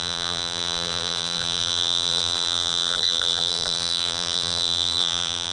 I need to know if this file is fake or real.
fake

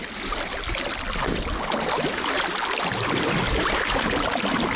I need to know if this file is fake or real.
real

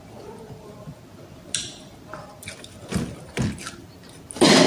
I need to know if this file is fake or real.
real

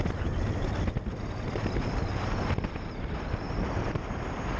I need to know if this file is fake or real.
real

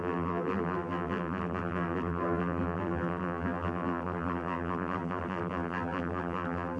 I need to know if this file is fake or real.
fake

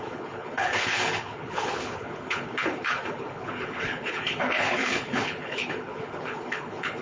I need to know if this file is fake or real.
fake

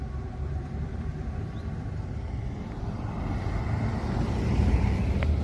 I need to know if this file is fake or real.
fake